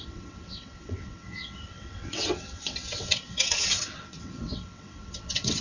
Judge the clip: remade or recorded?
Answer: remade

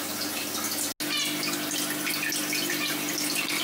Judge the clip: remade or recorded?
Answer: recorded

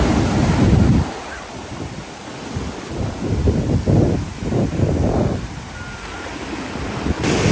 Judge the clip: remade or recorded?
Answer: recorded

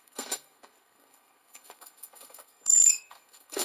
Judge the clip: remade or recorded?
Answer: remade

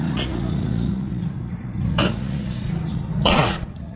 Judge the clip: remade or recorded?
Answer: remade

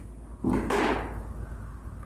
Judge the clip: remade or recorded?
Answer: recorded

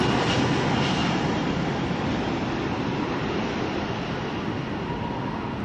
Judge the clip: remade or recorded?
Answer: recorded